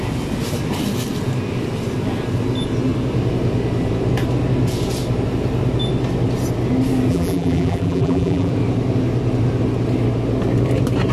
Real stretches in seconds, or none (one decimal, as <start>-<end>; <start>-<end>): 0.0-7.1; 8.5-11.1